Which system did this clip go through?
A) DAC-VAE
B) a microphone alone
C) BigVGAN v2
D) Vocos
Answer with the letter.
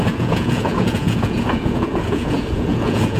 D